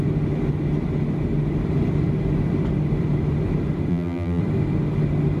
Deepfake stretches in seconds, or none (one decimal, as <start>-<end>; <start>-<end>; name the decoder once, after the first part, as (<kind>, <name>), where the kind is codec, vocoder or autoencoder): 3.9-4.4 (vocoder, BigVGAN v2)